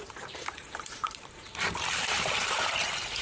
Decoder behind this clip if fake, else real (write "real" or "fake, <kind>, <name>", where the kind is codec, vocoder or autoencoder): fake, vocoder, BigVGAN v2